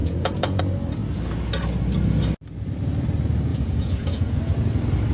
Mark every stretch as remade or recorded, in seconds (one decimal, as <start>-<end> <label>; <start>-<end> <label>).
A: 0.0-0.6 remade; 0.6-3.5 recorded; 3.5-4.4 remade; 4.4-5.1 recorded